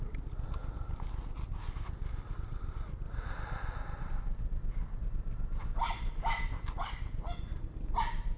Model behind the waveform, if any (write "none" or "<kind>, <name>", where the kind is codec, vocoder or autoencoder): none